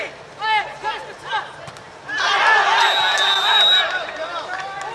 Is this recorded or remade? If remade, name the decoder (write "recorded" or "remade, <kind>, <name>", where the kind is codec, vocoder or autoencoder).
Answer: recorded